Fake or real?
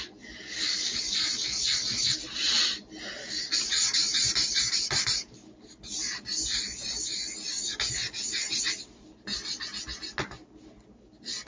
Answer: real